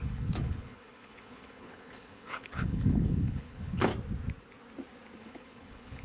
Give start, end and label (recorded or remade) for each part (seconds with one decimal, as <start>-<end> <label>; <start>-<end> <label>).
0.0-3.9 remade; 3.9-5.2 recorded; 5.2-6.0 remade